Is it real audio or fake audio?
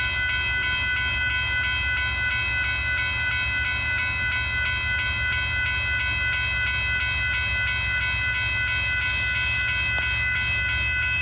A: real